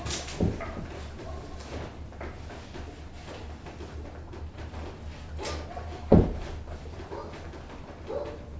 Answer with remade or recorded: recorded